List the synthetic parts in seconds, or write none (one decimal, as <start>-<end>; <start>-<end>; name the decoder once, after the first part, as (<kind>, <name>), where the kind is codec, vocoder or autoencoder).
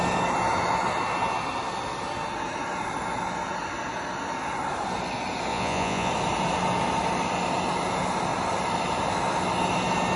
5.5-6.1 (vocoder, Vocos)